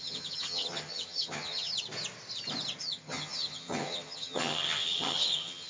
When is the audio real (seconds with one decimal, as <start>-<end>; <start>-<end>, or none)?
1.7-2.8